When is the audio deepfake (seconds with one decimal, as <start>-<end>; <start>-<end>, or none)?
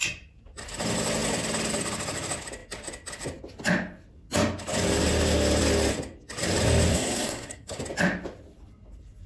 6.9-7.8